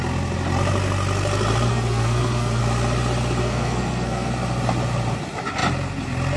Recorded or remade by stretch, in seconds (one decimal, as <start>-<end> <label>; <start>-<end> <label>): 0.0-1.7 recorded; 1.7-2.6 remade; 2.6-3.4 recorded; 3.4-4.3 remade; 4.3-6.4 recorded